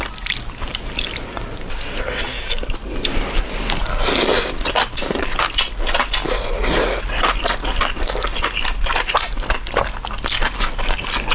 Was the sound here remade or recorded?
recorded